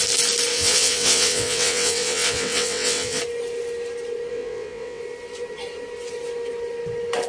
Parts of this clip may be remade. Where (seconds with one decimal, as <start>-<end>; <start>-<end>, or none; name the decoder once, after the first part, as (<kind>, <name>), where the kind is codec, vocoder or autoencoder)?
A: 0.5-3.2 (vocoder, WaveNeXt); 4.3-5.0